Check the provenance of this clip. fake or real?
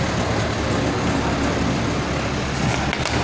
real